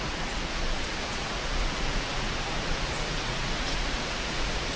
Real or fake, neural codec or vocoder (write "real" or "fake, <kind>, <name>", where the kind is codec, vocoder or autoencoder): fake, vocoder, Vocos